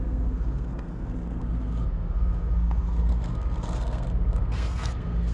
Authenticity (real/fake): fake